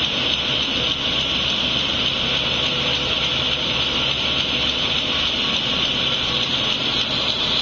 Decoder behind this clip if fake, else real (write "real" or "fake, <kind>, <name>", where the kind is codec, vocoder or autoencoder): real